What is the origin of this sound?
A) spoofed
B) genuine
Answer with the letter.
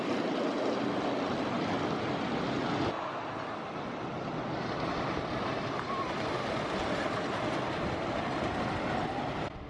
B